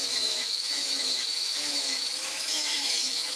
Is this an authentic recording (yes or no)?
no